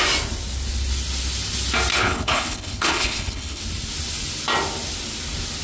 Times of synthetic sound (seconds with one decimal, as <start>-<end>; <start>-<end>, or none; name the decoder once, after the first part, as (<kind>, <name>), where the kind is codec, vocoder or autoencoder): 1.9-3.6 (codec, HILCodec)